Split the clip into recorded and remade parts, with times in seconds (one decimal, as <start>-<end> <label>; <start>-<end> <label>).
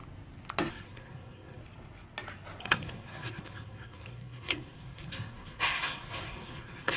0.0-0.7 recorded; 0.7-1.6 remade; 1.6-2.6 recorded; 2.6-7.0 remade